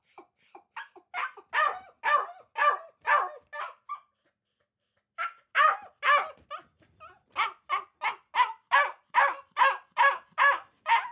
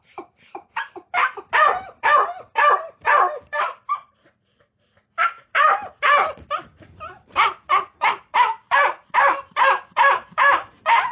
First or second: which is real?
first